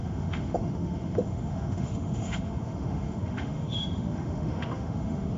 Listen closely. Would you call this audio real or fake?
fake